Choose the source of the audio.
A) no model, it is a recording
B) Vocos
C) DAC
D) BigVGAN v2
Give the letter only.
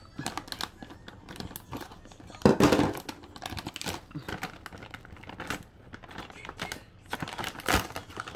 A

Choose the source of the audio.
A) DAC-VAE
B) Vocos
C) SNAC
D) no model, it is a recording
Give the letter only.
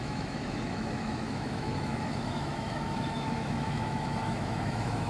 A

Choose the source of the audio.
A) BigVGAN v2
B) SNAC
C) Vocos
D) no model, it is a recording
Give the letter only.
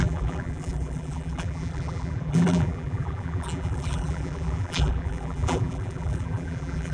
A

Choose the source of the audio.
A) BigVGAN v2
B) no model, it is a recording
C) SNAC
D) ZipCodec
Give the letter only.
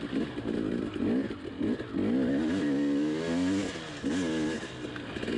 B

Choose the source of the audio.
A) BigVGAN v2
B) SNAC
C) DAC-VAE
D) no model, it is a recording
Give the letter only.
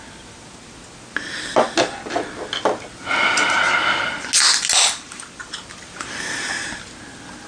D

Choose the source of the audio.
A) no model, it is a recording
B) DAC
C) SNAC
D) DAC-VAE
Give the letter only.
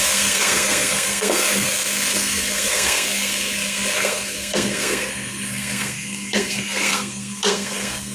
C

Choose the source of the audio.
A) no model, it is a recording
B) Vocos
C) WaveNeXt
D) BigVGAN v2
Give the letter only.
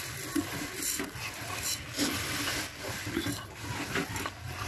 A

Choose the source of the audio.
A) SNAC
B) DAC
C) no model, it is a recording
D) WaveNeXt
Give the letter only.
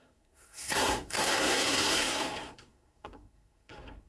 A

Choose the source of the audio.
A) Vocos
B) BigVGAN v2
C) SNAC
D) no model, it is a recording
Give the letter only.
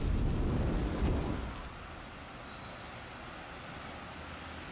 D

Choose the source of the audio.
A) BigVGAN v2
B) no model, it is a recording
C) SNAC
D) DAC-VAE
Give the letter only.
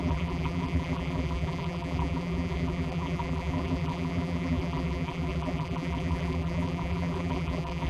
A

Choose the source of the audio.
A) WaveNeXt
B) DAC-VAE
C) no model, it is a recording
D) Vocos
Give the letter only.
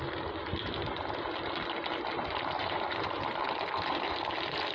C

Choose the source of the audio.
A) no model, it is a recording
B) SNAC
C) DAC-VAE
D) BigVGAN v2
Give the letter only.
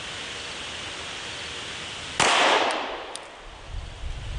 A